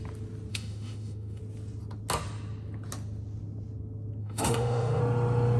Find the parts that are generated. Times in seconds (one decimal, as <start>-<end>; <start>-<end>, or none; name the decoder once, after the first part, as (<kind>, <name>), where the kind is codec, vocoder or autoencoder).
0.5-1.4 (autoencoder, DAC-VAE); 4.2-5.0